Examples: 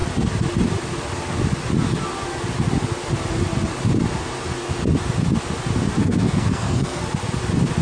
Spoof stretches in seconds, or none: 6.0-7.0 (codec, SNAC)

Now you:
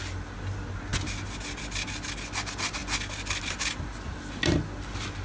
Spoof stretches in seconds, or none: none

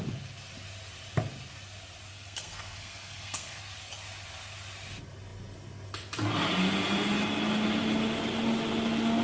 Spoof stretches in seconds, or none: 2.1-3.6 (codec, SNAC)

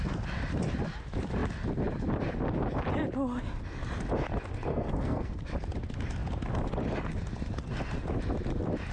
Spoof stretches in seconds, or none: 4.7-5.4 (codec, SNAC)

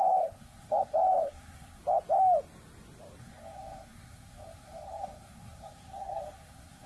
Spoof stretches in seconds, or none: 0.0-1.8 (codec, SNAC); 3.2-6.9

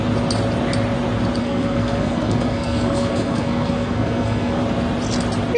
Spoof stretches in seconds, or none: 1.4-4.6 (codec, SNAC)

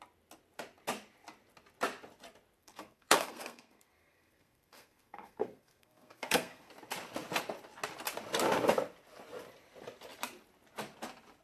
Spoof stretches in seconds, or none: 2.6-6.7 (codec, SNAC)

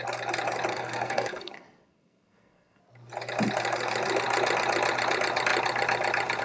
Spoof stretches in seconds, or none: 0.7-2.8 (codec, SNAC)